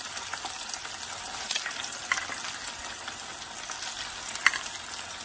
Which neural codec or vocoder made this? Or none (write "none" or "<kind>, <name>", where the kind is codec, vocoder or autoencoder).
none